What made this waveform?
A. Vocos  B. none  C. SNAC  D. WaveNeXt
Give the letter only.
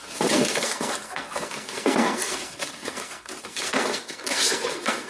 C